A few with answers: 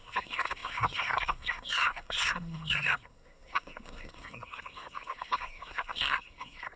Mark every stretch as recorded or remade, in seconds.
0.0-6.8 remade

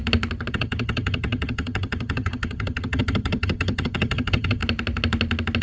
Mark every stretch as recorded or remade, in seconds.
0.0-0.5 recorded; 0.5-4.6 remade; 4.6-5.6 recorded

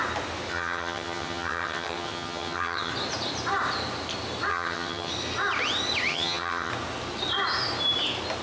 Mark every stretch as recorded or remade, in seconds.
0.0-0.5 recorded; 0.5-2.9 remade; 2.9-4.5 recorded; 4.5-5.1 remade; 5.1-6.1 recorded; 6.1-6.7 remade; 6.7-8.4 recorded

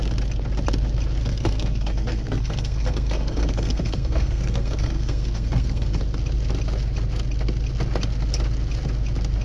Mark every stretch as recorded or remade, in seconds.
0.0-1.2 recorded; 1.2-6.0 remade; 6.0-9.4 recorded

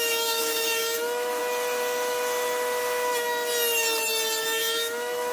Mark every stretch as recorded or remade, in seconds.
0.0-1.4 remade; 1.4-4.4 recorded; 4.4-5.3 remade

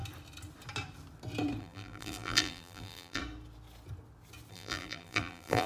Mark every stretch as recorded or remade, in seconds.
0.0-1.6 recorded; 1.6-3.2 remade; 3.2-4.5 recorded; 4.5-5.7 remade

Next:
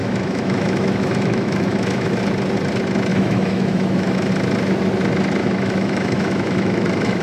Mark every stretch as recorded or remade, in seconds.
0.0-2.2 remade; 2.2-3.1 recorded; 3.1-4.3 remade; 4.3-5.4 recorded; 5.4-7.2 remade

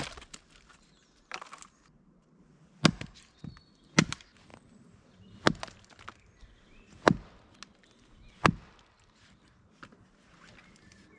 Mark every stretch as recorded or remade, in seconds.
0.0-11.2 recorded